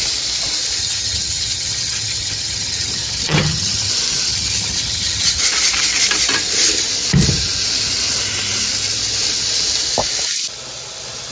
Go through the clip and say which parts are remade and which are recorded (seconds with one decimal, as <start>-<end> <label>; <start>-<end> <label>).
0.0-0.8 recorded; 0.8-3.9 remade; 3.9-4.3 recorded; 4.3-5.4 remade; 5.4-11.3 recorded